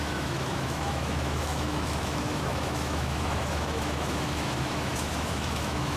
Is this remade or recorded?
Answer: remade